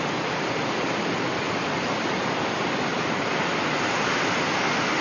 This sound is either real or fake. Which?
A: fake